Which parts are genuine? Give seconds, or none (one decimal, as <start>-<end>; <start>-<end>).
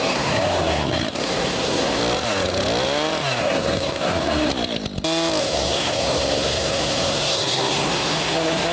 2.0-3.4; 4.5-5.4